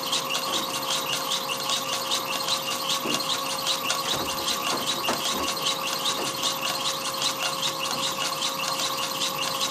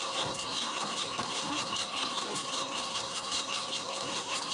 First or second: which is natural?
first